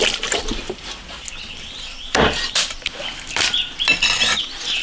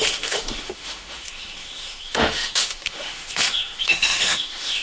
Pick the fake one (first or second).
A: second